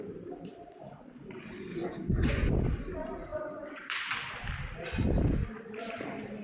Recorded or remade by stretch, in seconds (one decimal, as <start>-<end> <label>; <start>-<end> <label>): 0.0-1.7 recorded; 1.7-2.5 remade; 2.5-3.3 recorded; 3.3-4.2 remade; 4.2-6.4 recorded